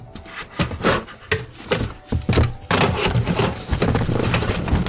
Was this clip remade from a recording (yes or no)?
no